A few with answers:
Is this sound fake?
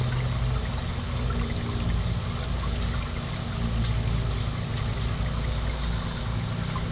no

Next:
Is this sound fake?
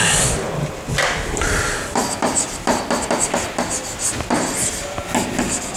no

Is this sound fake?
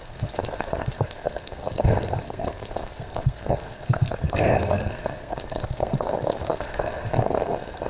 yes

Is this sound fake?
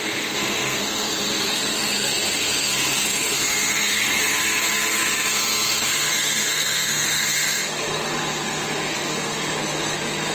yes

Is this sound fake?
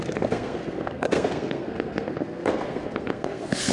yes